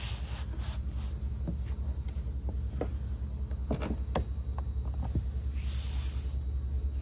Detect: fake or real real